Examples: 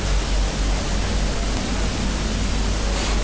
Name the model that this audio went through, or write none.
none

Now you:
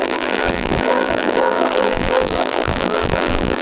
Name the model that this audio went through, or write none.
vocoder, BigVGAN v2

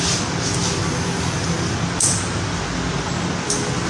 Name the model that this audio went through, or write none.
none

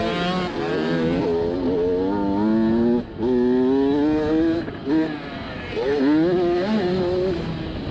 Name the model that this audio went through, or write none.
none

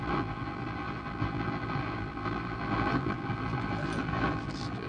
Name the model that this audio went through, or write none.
vocoder, BigVGAN v2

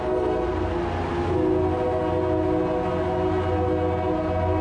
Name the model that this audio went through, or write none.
none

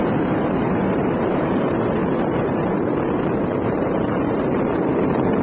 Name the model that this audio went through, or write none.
vocoder, BigVGAN v2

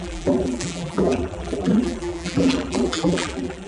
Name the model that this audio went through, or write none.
vocoder, BigVGAN v2